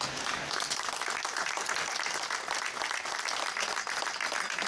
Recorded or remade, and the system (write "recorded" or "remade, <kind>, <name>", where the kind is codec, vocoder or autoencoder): recorded